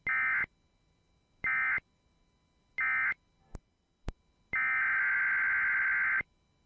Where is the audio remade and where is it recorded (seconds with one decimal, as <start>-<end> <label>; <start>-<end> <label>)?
0.0-6.7 recorded